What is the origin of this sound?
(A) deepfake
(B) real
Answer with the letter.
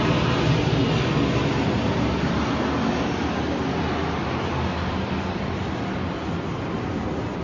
B